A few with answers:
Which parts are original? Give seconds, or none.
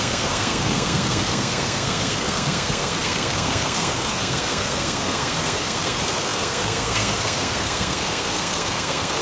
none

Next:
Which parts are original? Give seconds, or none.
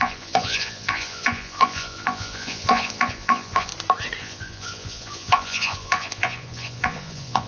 3.7-4.2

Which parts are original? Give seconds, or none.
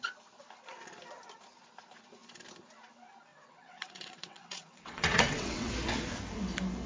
0.0-3.3; 5.7-6.9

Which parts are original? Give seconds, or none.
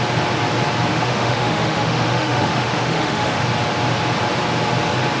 0.0-0.9; 3.5-5.2